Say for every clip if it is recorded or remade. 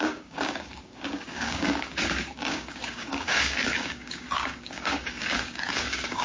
remade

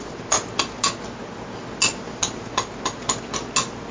recorded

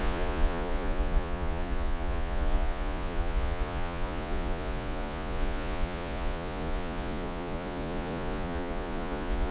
remade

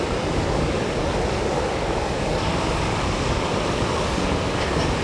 remade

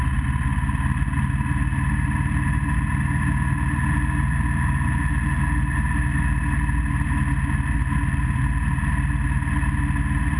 recorded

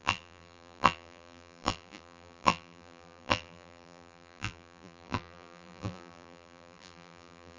remade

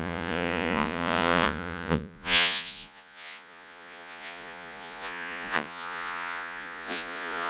remade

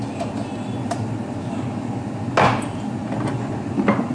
recorded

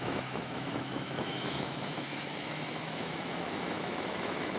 remade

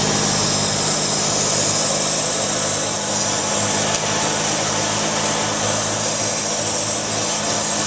recorded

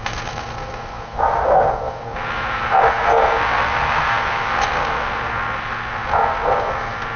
remade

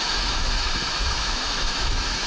remade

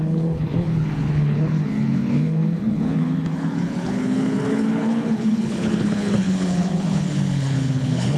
remade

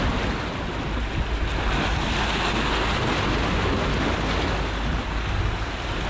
recorded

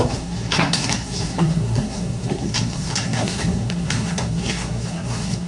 remade